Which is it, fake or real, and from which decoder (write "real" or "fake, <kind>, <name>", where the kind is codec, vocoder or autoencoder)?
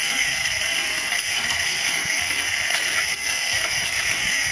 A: fake, codec, SNAC